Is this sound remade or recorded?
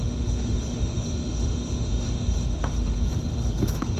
remade